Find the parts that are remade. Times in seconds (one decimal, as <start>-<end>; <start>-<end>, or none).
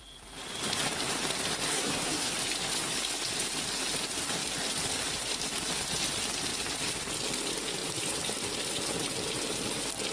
1.7-2.3